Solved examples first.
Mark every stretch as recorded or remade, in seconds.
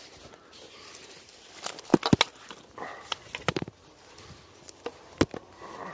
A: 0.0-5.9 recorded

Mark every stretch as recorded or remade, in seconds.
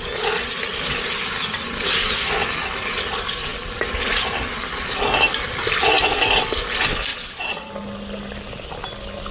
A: 0.0-7.1 recorded; 7.1-7.7 remade; 7.7-9.3 recorded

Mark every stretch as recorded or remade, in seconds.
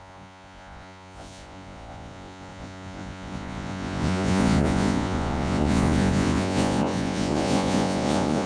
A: 0.0-8.5 remade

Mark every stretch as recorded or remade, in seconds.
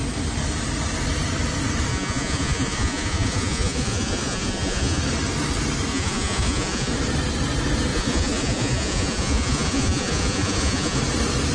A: 0.0-1.9 recorded; 1.9-5.0 remade; 5.0-5.9 recorded; 5.9-6.9 remade; 6.9-7.9 recorded; 7.9-11.0 remade; 11.0-11.5 recorded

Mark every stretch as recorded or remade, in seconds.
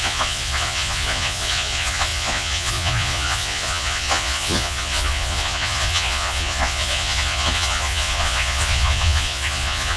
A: 0.0-10.0 remade